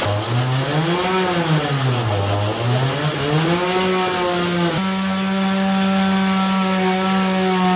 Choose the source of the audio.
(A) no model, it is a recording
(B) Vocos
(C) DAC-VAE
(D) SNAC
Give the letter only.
A